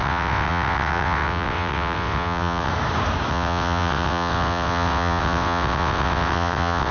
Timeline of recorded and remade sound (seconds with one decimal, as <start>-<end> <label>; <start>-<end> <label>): 0.0-2.7 remade; 2.7-3.3 recorded; 3.3-6.9 remade